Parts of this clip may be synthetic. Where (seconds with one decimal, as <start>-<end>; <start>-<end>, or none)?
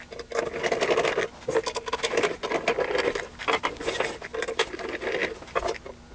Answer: none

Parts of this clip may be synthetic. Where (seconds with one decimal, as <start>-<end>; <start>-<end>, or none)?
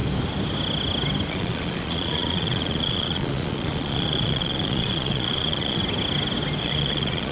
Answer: 1.3-5.8; 6.6-7.3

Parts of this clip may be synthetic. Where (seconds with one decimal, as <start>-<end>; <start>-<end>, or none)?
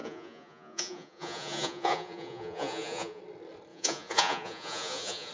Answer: 0.0-3.2; 3.7-5.3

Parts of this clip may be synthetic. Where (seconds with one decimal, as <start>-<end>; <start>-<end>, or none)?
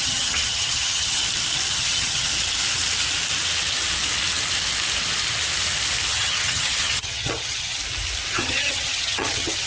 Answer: 0.0-1.2; 1.7-2.3; 6.1-7.8; 8.3-9.7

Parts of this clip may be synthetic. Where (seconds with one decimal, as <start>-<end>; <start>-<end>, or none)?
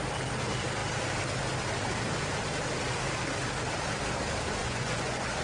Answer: 4.6-5.4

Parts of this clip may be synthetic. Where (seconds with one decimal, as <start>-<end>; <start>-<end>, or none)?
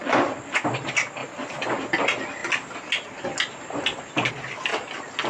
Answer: none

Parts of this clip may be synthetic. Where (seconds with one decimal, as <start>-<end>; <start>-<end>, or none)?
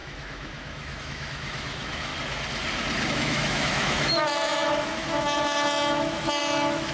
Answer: 0.0-2.1; 3.1-6.9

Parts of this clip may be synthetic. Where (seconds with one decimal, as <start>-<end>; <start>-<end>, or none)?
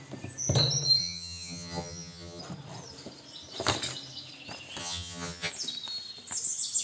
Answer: 1.0-2.4; 4.8-5.5